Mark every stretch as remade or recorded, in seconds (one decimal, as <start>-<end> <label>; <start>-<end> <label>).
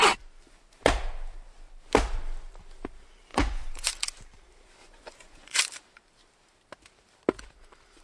0.0-3.3 recorded; 3.3-3.9 remade; 3.9-4.8 recorded; 4.8-5.6 remade; 5.6-8.0 recorded